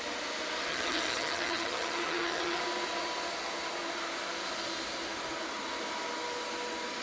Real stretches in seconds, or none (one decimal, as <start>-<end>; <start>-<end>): 0.0-0.7; 2.6-7.0